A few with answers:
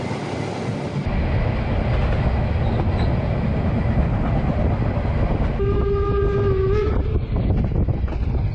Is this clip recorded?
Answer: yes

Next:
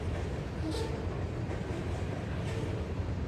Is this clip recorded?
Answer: yes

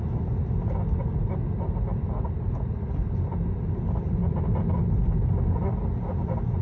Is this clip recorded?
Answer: yes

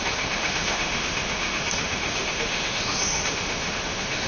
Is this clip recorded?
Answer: no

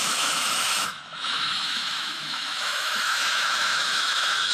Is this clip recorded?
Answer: no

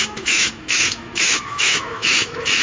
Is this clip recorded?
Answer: no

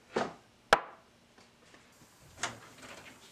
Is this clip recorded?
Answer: yes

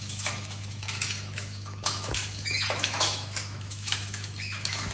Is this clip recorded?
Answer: no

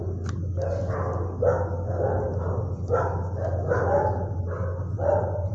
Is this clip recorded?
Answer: yes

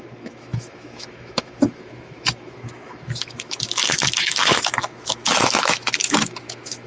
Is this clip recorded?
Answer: no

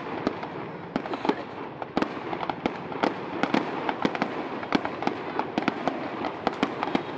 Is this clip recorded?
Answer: yes